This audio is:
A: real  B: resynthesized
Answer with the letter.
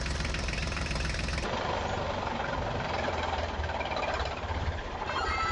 B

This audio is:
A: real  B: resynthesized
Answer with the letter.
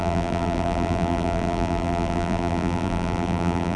B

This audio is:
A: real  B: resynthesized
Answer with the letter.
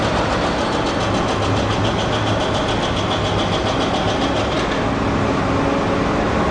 A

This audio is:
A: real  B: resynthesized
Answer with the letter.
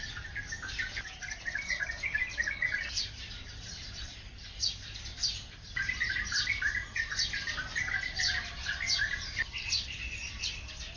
B